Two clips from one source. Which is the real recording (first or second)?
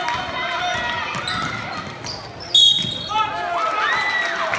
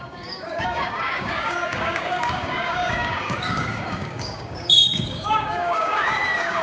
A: first